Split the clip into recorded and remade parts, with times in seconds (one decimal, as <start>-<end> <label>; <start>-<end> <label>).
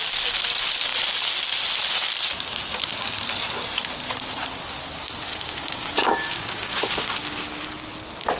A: 0.0-5.3 recorded; 5.3-7.6 remade; 7.6-8.4 recorded